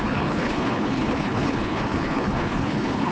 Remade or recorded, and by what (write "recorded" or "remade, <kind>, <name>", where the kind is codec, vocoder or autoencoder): remade, codec, HILCodec